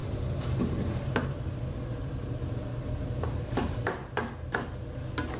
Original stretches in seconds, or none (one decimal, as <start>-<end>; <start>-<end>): 4.0-5.4